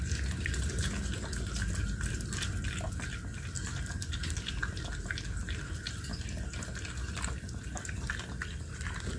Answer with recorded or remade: recorded